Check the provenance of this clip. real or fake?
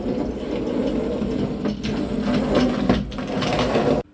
real